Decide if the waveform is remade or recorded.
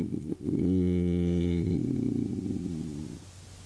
recorded